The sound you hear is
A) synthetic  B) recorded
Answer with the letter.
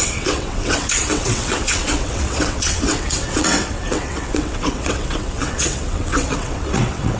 A